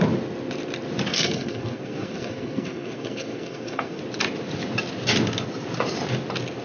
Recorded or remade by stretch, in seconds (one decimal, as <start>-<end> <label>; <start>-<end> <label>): 0.0-1.1 recorded; 1.1-4.0 remade; 4.0-6.6 recorded